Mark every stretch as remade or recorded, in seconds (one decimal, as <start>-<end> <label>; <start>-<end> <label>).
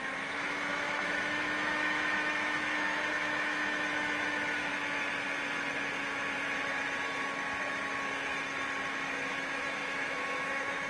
0.0-4.7 remade; 4.7-8.9 recorded; 8.9-10.9 remade